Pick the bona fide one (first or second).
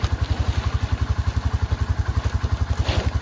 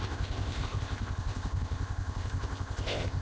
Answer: first